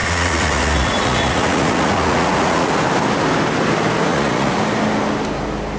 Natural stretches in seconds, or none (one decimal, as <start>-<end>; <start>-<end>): 2.7-4.1; 4.6-5.8